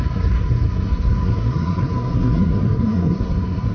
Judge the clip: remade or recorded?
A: remade